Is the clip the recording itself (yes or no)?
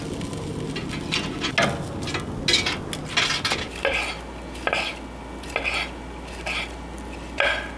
yes